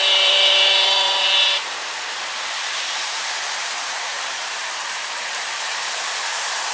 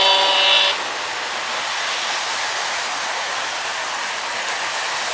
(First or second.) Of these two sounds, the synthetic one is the first